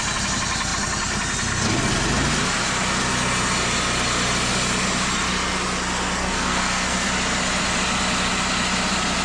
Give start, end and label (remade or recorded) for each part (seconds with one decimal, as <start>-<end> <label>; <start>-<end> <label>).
0.0-6.2 recorded; 6.2-7.1 remade; 7.1-9.2 recorded